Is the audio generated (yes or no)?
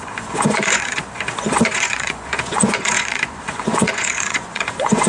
yes